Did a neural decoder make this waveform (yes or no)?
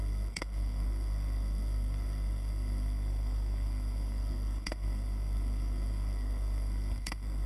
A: yes